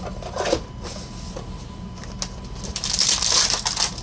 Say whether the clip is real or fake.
real